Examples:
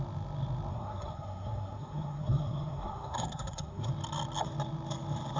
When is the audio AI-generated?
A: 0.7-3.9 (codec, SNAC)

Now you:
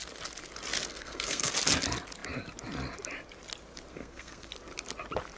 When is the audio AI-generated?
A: 0.9-1.5 (codec, SNAC); 3.9-4.5

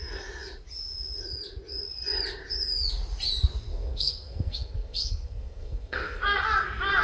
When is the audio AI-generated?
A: 3.7-6.4 (codec, SNAC)